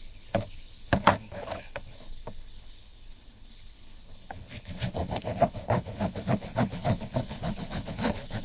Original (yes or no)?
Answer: no